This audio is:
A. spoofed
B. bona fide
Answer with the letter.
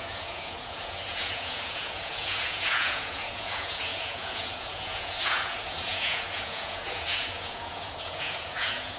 A